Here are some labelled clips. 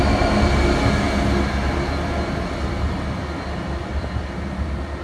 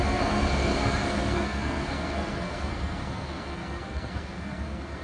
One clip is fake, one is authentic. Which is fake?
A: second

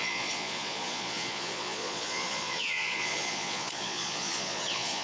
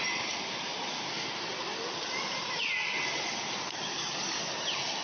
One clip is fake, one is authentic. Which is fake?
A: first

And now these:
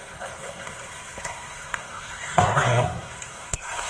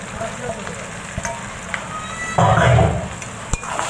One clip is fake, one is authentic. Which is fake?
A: first